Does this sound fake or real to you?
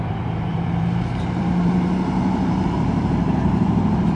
fake